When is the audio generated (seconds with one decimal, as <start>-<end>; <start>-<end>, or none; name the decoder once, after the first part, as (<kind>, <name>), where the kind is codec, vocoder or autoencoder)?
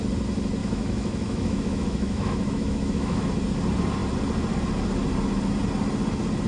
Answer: 0.6-3.3 (autoencoder, DAC-VAE)